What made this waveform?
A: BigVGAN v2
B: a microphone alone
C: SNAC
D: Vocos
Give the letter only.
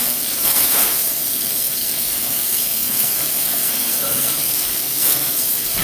C